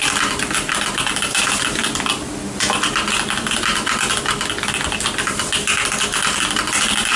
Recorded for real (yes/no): yes